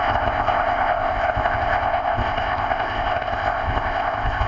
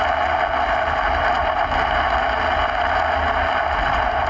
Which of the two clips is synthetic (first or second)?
first